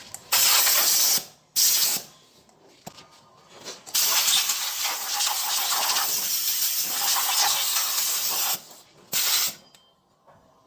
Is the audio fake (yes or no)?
no